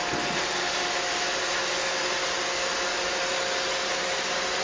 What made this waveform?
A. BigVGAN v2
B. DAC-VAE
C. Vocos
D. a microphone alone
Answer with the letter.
D